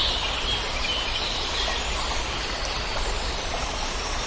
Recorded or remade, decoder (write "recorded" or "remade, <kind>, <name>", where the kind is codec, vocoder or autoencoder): recorded